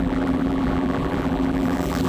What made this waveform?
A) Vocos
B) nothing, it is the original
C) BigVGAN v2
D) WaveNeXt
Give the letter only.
C